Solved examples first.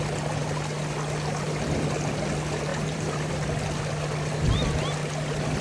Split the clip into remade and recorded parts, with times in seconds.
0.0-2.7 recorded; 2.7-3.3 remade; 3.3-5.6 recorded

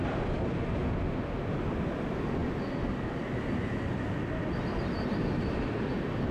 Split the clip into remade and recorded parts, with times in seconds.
0.0-2.4 recorded; 2.4-6.3 remade

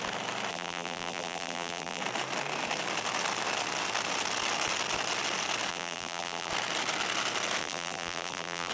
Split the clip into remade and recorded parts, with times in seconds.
0.0-0.5 recorded; 0.5-2.0 remade; 2.0-5.7 recorded; 5.7-6.5 remade; 6.5-7.6 recorded; 7.6-8.7 remade

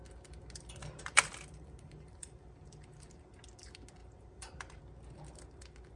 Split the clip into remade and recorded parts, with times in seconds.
0.0-0.8 recorded; 0.8-3.3 remade; 3.3-4.0 recorded; 4.0-4.8 remade; 4.8-6.0 recorded

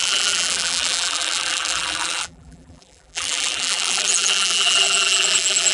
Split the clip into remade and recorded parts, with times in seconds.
0.0-5.7 remade